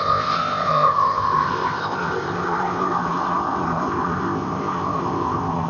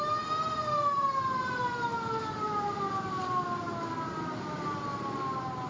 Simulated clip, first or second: first